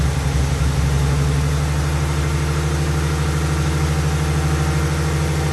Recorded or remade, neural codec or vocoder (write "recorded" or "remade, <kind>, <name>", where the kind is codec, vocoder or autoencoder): recorded